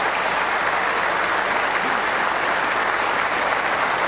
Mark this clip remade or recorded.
recorded